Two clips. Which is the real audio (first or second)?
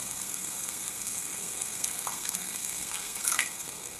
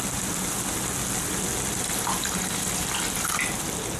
second